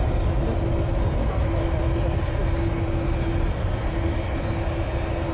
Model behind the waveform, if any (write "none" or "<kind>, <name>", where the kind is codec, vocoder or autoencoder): none